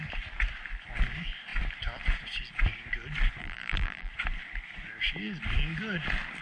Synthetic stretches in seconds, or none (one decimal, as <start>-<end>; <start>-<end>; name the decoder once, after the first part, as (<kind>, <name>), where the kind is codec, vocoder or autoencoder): 3.4-4.1 (vocoder, BigVGAN v2)